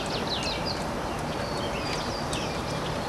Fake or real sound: real